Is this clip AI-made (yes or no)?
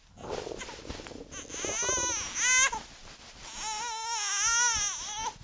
no